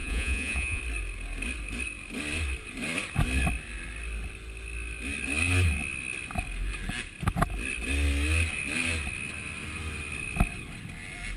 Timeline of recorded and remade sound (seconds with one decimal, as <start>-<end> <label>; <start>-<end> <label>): 0.0-0.8 remade; 0.8-11.4 recorded